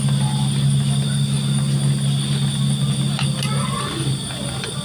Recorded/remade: recorded